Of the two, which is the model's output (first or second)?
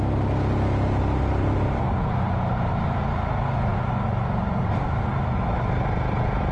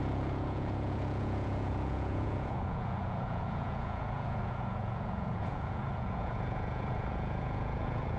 second